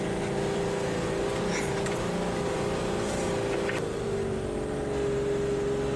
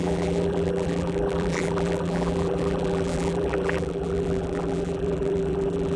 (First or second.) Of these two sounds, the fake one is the second